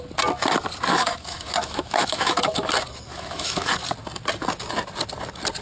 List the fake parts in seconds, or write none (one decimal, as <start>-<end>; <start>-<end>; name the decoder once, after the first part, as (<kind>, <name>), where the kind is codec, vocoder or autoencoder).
0.9-2.7 (autoencoder, DAC-VAE); 3.1-3.7